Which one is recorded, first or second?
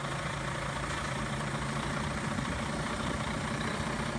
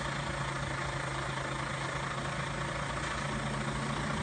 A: second